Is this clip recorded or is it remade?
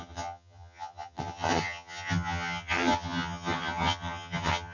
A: remade